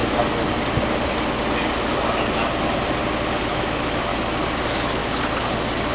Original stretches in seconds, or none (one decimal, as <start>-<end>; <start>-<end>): 0.0-3.5; 4.1-4.6; 5.0-5.9